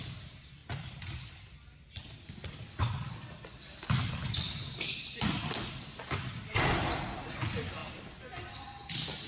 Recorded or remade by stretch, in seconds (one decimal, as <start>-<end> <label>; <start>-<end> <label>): 0.0-9.3 recorded